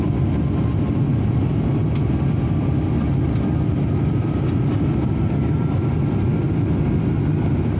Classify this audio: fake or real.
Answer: real